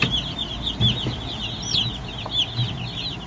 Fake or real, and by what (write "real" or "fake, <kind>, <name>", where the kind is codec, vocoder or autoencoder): real